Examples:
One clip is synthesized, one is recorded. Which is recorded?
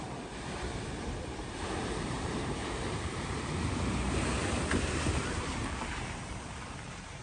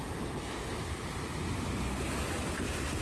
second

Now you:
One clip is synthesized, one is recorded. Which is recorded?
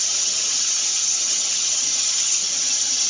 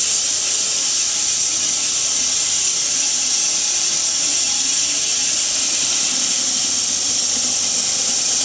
second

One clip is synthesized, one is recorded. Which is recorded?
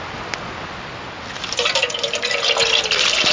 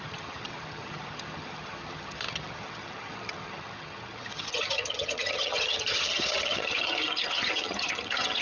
first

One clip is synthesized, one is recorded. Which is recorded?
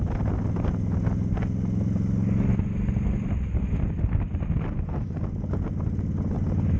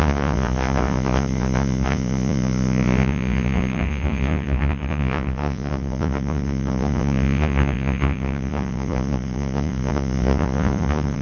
first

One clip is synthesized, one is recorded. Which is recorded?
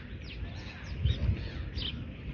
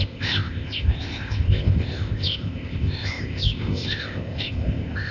first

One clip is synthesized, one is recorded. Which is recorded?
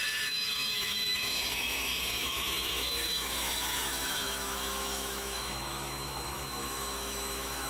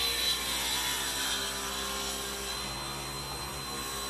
second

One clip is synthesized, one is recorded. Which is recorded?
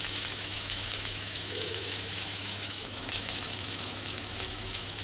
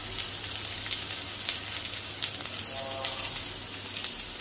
second